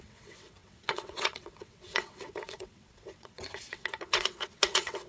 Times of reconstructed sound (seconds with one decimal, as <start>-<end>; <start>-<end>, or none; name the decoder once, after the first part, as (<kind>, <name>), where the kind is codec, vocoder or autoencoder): 0.0-5.1 (vocoder, WaveNeXt)

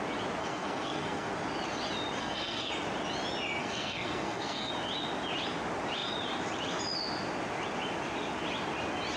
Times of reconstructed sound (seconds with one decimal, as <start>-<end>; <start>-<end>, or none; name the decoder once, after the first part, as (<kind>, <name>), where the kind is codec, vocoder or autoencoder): 0.4-1.3 (codec, SNAC); 2.2-2.7; 3.6-4.7

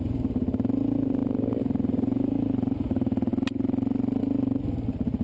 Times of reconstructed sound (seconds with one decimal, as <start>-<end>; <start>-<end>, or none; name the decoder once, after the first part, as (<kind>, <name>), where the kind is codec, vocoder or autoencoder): none

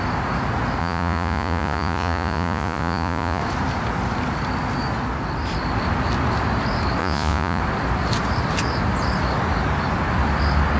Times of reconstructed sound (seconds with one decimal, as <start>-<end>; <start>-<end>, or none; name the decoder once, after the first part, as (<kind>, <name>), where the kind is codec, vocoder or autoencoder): 0.8-3.4 (vocoder, Vocos); 7.0-7.6

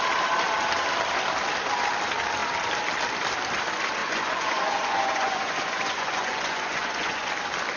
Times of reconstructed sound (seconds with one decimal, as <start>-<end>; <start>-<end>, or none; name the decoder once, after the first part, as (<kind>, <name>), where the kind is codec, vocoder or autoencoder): 4.0-7.3 (vocoder, Vocos)

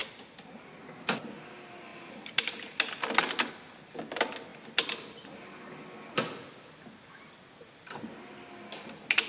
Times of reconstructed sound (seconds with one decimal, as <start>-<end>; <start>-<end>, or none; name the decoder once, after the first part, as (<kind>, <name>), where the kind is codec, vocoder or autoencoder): none